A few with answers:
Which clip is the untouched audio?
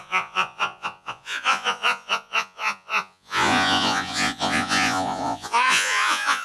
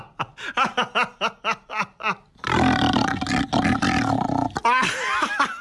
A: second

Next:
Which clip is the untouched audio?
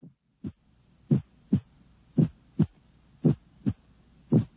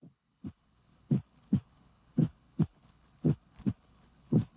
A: first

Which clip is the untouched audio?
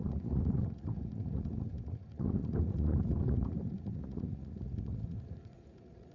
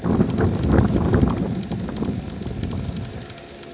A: second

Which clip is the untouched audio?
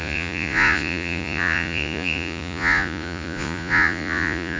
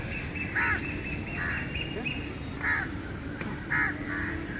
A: second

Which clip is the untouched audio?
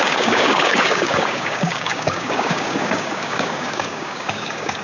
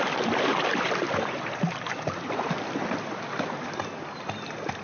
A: second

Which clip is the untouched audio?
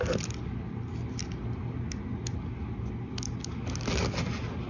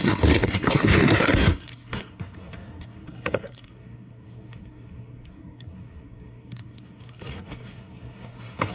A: first